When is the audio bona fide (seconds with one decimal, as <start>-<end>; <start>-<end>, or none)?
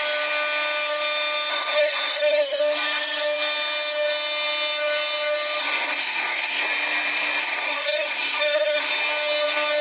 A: 0.0-1.5; 2.6-5.6; 6.6-7.4; 8.9-9.8